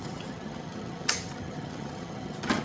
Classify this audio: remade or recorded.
remade